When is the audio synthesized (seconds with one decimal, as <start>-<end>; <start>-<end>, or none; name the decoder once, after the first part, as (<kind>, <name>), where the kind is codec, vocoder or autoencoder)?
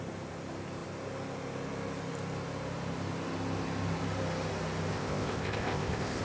4.9-6.2 (codec, ZipCodec)